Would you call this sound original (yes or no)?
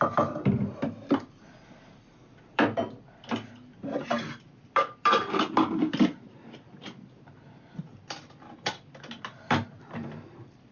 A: no